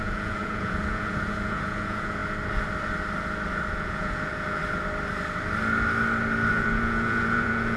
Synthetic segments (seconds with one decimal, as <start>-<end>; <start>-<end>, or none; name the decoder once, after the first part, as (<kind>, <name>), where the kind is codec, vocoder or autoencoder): 0.0-2.2 (vocoder, Vocos); 3.7-4.6; 6.5-7.8